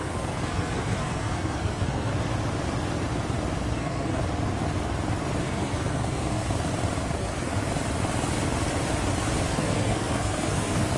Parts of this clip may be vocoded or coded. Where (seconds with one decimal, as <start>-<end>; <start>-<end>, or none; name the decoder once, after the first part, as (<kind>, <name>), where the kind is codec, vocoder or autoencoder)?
0.0-2.1 (codec, SNAC); 3.7-4.2; 5.4-6.4; 7.0-7.5; 9.5-11.0